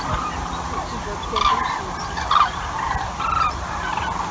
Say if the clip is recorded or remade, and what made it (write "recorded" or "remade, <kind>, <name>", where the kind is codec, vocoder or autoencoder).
recorded